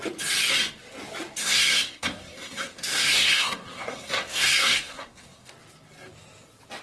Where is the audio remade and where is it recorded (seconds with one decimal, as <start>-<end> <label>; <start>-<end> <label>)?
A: 0.0-1.4 recorded; 1.4-5.5 remade; 5.5-6.8 recorded